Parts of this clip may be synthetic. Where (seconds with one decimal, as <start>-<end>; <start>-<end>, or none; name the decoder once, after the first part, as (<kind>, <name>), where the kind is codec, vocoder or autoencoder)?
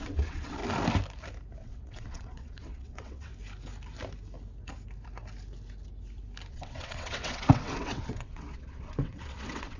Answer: 0.0-0.6 (vocoder, WaveNeXt); 1.6-3.3; 6.5-9.8